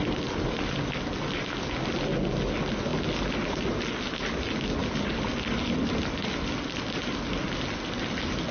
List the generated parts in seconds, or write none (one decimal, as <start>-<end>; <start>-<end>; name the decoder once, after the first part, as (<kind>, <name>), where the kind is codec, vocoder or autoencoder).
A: none